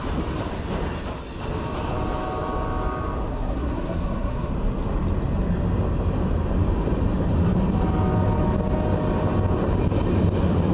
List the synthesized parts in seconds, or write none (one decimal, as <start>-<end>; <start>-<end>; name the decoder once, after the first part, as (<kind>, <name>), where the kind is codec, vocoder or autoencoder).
3.3-4.5 (codec, SNAC)